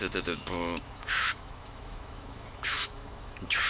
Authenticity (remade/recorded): remade